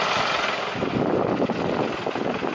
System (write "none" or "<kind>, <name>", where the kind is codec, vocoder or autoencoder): vocoder, BigVGAN v2